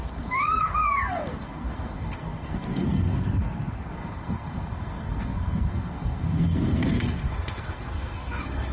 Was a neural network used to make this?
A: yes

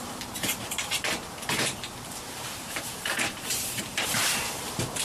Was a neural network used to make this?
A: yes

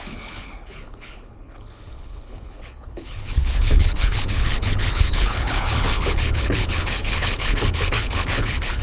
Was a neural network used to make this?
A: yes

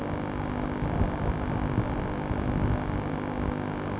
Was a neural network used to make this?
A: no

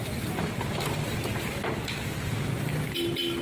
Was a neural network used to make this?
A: no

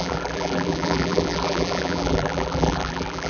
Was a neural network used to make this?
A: yes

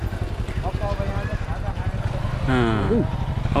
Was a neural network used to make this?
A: no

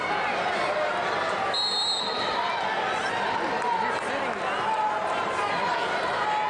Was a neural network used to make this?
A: no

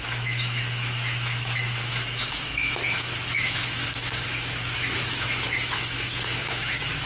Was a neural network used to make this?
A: yes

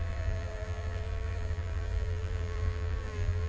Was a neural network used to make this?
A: yes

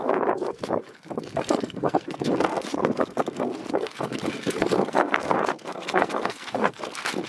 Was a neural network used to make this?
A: yes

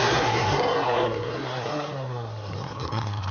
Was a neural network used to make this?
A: yes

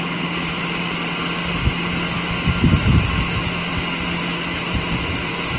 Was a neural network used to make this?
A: no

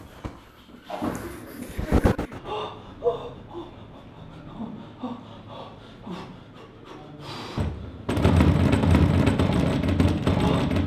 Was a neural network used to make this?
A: no